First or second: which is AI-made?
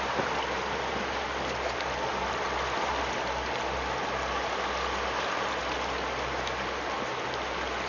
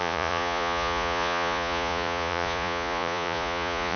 second